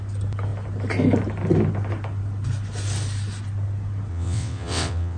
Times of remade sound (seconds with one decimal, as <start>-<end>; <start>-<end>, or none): 4.1-5.2